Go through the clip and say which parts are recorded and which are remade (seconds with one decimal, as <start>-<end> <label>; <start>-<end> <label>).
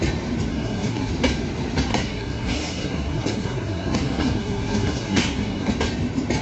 0.0-0.5 recorded; 0.5-1.1 remade; 1.1-1.9 recorded; 1.9-5.7 remade; 5.7-6.4 recorded